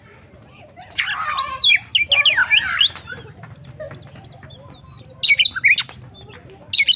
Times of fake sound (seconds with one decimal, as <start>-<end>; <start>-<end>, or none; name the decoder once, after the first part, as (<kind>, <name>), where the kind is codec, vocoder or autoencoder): none